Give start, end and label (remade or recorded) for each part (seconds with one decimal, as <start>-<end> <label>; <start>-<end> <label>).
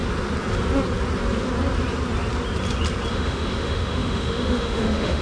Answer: 0.0-3.1 recorded; 3.1-5.2 remade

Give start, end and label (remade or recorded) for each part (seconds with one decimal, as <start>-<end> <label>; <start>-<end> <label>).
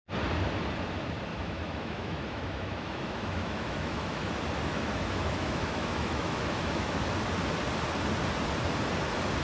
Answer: 0.0-1.3 recorded; 1.3-4.3 remade; 4.3-4.7 recorded; 4.7-7.0 remade; 7.0-9.4 recorded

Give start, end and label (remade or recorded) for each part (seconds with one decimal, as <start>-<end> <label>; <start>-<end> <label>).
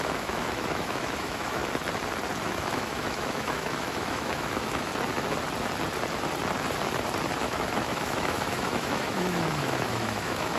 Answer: 0.0-1.6 remade; 1.6-2.4 recorded; 2.4-4.9 remade; 4.9-7.4 recorded; 7.4-10.6 remade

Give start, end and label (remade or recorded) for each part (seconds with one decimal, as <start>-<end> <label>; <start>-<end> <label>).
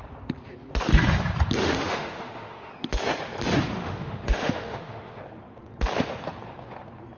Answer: 0.0-1.6 recorded; 1.6-2.7 remade; 2.7-3.8 recorded; 3.8-5.2 remade; 5.2-7.2 recorded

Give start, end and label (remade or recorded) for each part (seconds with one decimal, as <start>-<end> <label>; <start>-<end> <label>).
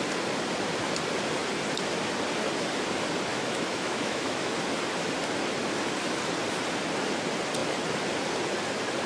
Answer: 0.0-3.3 recorded; 3.3-4.5 remade; 4.5-9.1 recorded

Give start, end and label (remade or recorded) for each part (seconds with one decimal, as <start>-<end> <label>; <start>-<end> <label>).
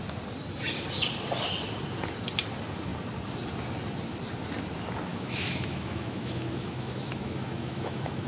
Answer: 0.0-5.1 recorded; 5.1-8.3 remade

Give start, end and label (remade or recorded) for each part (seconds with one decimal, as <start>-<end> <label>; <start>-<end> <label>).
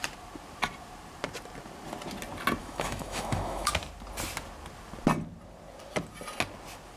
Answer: 0.0-2.6 recorded; 2.6-3.7 remade; 3.7-7.0 recorded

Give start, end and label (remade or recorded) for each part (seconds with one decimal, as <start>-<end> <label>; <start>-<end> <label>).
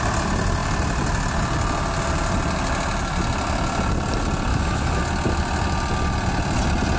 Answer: 0.0-4.5 recorded; 4.5-5.0 remade; 5.0-7.0 recorded